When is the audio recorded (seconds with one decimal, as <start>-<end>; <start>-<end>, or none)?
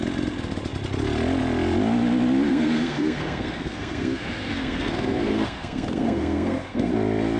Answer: 0.0-2.5; 6.9-7.4